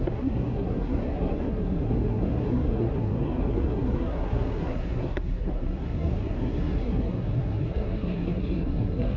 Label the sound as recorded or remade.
remade